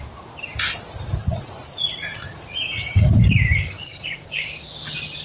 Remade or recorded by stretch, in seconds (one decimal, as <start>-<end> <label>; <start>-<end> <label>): 0.0-1.2 recorded; 1.2-3.4 remade; 3.4-3.8 recorded; 3.8-4.4 remade; 4.4-5.2 recorded